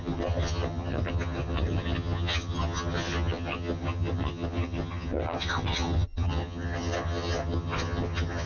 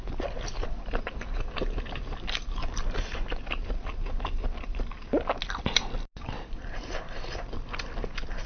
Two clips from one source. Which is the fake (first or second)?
first